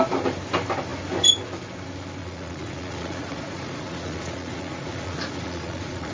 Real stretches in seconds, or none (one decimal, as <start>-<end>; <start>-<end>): 0.0-2.2